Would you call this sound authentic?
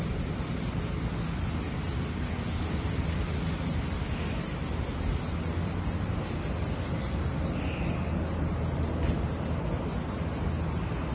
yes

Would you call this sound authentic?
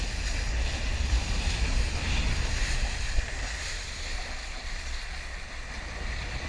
yes